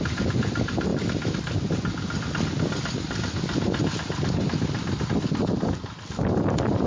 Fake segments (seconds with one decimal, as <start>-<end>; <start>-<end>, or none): 0.9-5.0